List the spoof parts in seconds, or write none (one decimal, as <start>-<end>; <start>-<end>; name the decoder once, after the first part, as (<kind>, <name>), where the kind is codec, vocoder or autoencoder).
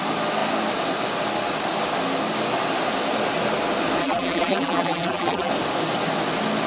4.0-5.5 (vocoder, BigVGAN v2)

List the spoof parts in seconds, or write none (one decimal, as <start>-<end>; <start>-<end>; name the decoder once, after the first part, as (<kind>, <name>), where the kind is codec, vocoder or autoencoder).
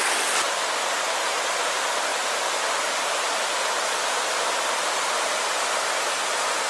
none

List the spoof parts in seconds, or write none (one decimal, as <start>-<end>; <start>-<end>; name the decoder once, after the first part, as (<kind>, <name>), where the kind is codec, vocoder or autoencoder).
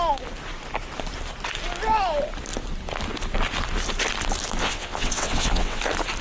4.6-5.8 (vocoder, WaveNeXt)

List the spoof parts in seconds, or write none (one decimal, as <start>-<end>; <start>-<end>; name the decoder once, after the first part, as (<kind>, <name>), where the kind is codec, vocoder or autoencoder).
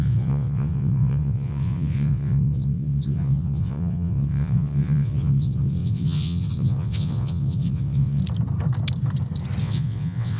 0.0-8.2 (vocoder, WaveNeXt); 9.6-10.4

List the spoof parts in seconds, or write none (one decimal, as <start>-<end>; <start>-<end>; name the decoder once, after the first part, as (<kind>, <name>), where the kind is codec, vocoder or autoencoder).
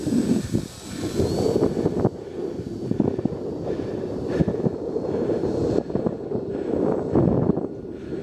3.9-6.5 (vocoder, BigVGAN v2)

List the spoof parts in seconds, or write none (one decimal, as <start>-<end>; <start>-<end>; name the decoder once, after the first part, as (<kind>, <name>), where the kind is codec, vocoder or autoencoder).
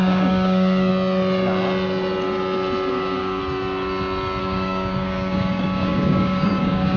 0.0-0.9 (codec, DAC); 2.9-3.4; 4.4-7.0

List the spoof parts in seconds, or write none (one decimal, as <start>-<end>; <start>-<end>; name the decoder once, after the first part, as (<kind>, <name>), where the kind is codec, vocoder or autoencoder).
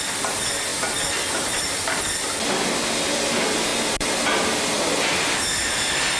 none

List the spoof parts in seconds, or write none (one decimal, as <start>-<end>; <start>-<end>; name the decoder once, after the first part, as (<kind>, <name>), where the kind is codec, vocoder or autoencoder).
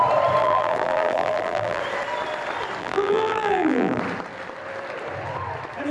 0.4-1.8 (vocoder, BigVGAN v2); 2.8-4.0